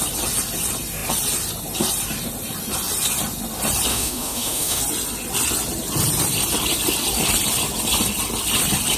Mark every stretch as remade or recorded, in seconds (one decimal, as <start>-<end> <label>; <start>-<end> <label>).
0.0-3.9 recorded; 3.9-4.8 remade; 4.8-9.0 recorded